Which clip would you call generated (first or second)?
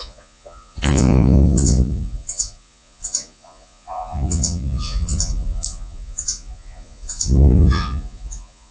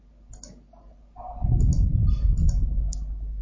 first